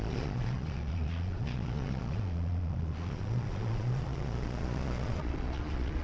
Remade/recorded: remade